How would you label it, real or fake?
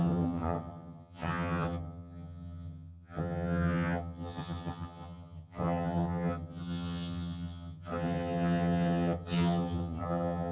fake